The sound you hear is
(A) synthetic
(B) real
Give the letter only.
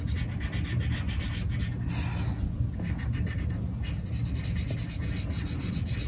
B